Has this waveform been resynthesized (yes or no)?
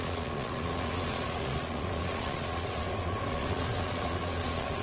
yes